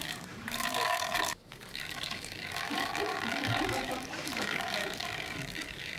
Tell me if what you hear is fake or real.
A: fake